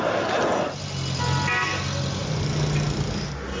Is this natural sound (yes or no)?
yes